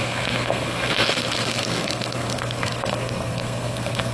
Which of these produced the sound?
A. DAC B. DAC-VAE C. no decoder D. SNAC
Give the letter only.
D